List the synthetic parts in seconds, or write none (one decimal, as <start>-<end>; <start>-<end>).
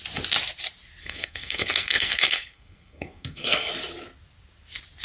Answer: 1.0-3.7